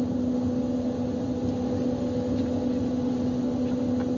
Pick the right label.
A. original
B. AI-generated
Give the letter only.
A